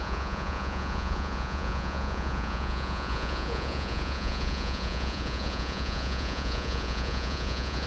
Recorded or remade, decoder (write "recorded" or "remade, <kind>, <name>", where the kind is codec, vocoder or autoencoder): remade, vocoder, Vocos